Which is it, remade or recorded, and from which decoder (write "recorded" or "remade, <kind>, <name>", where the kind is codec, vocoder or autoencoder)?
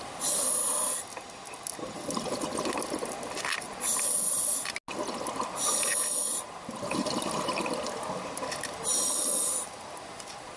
recorded